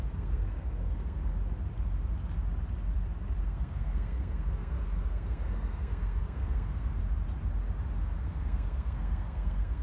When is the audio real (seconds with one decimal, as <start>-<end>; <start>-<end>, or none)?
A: 1.3-3.4; 7.0-8.0